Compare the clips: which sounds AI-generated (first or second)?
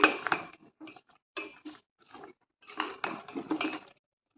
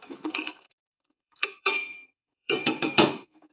second